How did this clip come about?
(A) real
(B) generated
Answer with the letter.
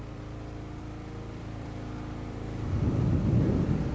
B